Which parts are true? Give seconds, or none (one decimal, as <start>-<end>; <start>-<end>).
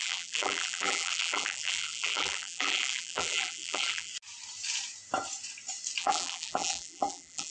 4.1-6.0